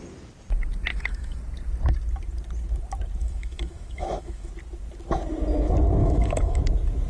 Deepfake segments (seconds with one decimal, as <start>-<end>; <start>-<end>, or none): 0.9-1.4; 3.2-4.5; 6.0-6.6